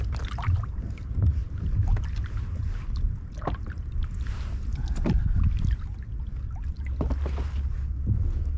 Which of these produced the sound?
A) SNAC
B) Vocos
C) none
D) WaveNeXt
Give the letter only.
C